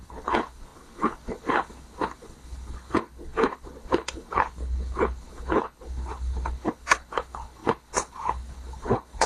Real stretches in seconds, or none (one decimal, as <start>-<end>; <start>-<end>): none